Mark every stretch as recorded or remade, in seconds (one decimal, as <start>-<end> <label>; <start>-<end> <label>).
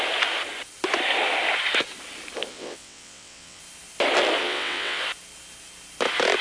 0.0-2.5 recorded; 2.5-3.6 remade; 3.6-4.4 recorded; 4.4-5.0 remade; 5.0-6.4 recorded